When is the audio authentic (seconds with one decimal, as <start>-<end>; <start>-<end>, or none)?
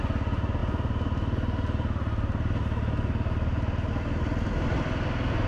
0.0-5.5